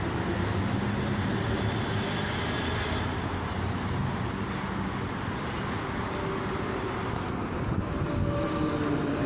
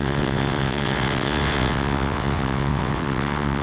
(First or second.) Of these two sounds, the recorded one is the first